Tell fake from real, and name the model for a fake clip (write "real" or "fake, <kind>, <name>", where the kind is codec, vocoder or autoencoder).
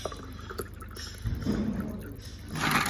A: real